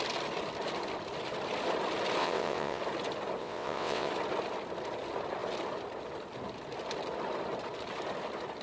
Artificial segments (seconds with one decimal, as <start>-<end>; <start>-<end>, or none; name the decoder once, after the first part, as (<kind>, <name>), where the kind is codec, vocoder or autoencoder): 2.2-2.8 (vocoder, WaveNeXt); 3.4-4.1

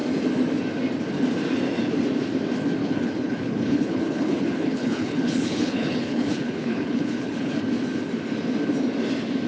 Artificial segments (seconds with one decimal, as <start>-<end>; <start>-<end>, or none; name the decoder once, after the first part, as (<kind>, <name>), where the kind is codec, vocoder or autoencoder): 2.8-7.6 (codec, HILCodec)

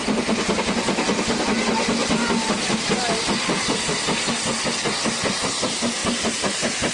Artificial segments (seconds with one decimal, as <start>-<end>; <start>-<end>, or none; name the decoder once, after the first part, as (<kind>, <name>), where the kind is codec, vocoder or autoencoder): 2.0-4.3 (vocoder, BigVGAN v2); 6.0-6.9

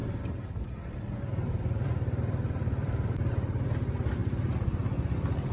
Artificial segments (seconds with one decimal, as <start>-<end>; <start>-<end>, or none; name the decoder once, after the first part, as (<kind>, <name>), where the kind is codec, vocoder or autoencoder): 0.0-3.3 (vocoder, BigVGAN v2); 4.2-5.5

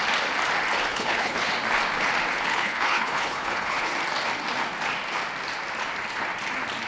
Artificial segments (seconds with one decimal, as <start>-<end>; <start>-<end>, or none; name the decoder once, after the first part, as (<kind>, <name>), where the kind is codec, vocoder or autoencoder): 0.9-1.5 (codec, HILCodec); 2.5-3.9

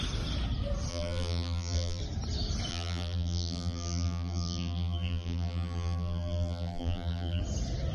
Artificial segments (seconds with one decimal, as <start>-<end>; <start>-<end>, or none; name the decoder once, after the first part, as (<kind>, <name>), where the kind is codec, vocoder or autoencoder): 0.9-2.0 (vocoder, BigVGAN v2); 2.7-7.4

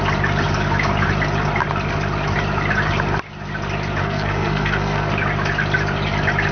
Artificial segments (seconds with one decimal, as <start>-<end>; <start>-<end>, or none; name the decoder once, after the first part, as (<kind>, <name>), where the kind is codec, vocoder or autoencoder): 4.0-5.1 (codec, SNAC)

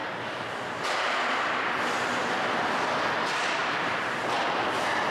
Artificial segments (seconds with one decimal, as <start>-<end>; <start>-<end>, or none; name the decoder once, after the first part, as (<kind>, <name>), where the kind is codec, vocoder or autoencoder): 0.0-1.1 (vocoder, BigVGAN v2); 3.6-4.2